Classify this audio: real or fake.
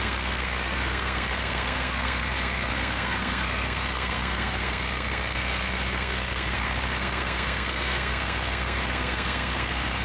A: fake